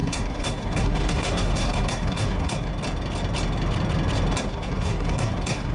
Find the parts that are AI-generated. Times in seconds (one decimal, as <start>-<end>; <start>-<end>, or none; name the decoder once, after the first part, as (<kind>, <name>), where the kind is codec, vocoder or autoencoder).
0.0-2.7 (codec, SNAC); 4.4-5.7